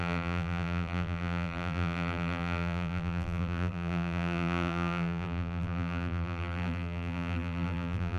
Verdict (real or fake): fake